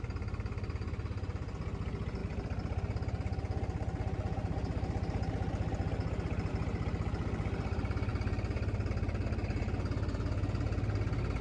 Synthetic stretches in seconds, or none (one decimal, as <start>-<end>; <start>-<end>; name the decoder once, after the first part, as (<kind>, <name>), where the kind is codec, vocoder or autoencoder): none